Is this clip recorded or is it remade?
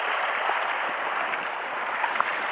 recorded